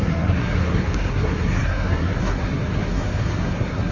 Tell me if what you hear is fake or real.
fake